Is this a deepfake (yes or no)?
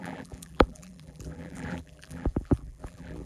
yes